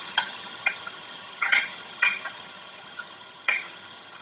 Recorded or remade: remade